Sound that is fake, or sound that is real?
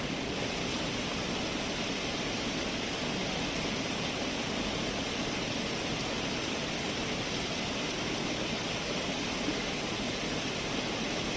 real